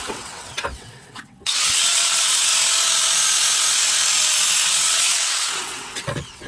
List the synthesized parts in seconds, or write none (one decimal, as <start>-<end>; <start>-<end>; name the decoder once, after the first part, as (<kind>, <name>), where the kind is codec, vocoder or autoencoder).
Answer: 0.0-2.5 (vocoder, WaveNeXt); 4.7-6.5